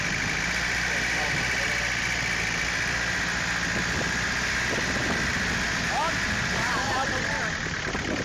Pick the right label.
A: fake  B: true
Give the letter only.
B